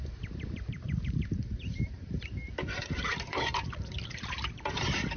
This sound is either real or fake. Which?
fake